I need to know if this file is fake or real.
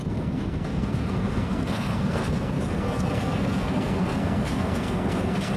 fake